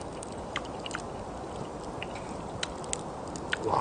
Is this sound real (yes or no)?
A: yes